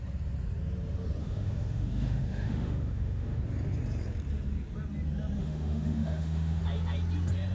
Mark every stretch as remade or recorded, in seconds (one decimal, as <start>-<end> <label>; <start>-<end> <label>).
0.0-1.2 recorded; 1.2-3.4 remade; 3.4-5.4 recorded; 5.4-6.6 remade; 6.6-7.5 recorded